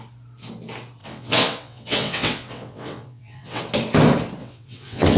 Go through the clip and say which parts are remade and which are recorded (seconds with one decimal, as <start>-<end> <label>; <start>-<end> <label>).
0.0-1.0 recorded; 1.0-3.6 remade; 3.6-4.4 recorded; 4.4-5.2 remade